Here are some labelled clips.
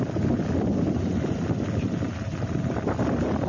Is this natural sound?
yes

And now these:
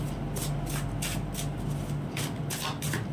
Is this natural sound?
yes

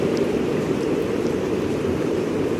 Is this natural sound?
no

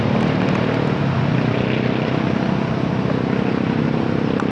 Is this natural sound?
yes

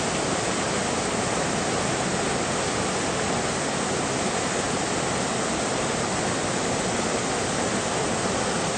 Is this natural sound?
yes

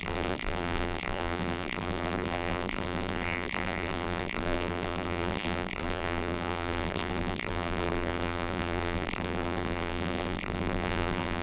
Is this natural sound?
no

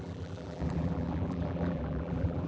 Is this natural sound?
no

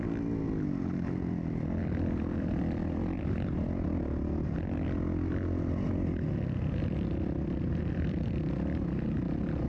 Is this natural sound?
yes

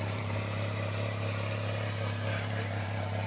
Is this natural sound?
no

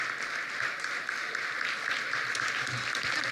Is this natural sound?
no